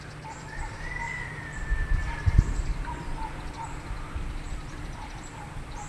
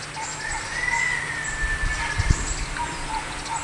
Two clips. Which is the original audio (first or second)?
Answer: second